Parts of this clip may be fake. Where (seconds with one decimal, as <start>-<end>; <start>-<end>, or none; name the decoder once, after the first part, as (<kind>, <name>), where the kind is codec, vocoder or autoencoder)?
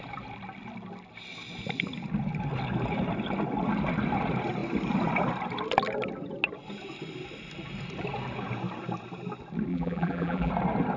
9.7-10.5 (vocoder, BigVGAN v2)